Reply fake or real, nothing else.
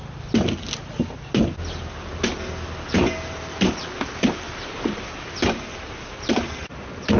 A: real